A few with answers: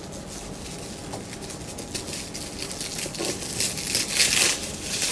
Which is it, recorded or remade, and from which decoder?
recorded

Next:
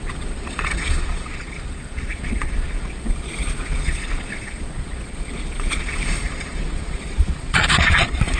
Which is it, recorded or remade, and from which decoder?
remade, vocoder, Vocos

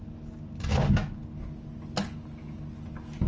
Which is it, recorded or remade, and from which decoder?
recorded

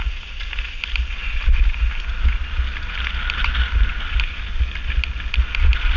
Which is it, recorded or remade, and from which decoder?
recorded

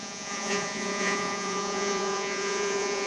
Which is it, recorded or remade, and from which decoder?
remade, vocoder, Vocos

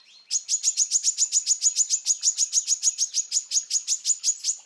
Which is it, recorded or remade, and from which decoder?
recorded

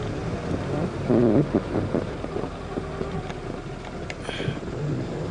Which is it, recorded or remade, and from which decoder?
recorded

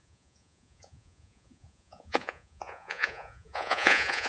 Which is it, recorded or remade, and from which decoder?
remade, vocoder, Vocos